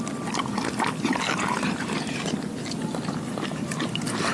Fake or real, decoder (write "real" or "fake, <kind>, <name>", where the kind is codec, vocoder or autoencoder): real